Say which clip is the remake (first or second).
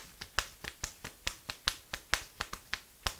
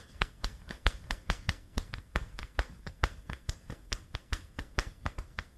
second